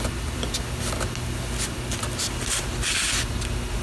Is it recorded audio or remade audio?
recorded